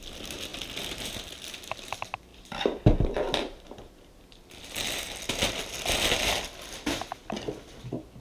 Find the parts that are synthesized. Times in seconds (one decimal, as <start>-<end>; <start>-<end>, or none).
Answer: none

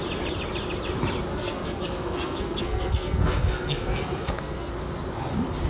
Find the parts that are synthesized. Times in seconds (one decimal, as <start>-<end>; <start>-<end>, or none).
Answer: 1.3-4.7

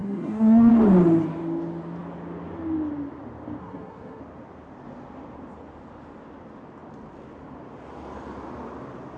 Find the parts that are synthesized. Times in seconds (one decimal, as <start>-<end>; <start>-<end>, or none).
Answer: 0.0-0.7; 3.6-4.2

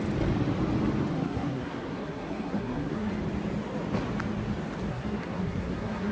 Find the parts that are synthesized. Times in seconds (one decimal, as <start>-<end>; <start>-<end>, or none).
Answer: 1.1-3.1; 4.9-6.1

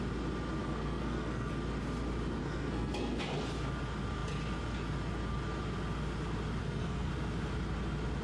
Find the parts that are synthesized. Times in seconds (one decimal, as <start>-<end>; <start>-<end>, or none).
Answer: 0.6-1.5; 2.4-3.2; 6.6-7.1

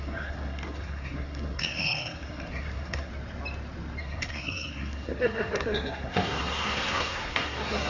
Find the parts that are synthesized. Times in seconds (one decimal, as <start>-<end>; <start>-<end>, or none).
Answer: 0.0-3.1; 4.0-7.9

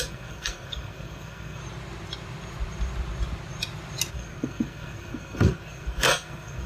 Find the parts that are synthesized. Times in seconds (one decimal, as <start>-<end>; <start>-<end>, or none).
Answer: 0.0-1.6; 4.1-6.7